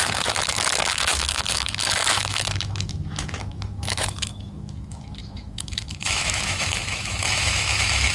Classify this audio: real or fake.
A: fake